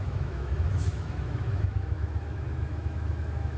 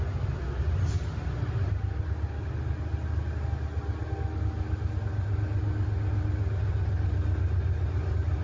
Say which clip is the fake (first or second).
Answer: first